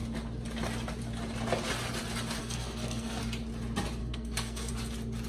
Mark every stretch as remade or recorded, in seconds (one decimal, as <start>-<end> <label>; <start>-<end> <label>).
0.0-2.4 recorded; 2.4-3.2 remade; 3.2-4.0 recorded; 4.0-4.7 remade; 4.7-5.3 recorded